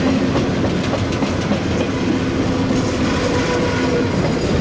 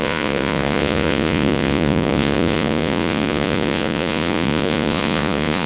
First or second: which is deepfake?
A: second